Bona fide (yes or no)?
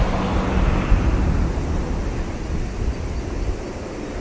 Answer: yes